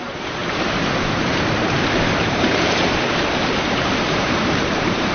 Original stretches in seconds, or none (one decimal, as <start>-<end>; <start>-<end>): none